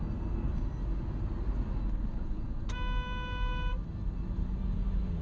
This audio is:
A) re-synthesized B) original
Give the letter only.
B